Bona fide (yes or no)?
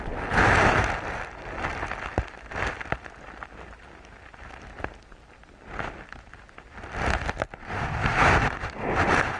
yes